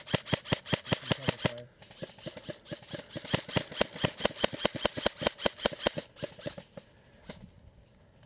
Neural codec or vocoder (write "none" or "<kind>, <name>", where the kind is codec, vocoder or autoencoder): none